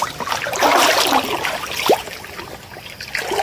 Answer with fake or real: real